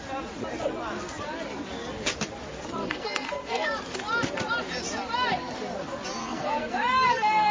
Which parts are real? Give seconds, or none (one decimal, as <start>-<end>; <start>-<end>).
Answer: 0.0-2.8; 3.7-6.2